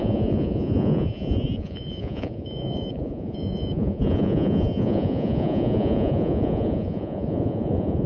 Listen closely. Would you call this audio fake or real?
fake